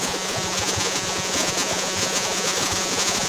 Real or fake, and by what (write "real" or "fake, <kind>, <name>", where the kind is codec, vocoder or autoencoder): fake, vocoder, Vocos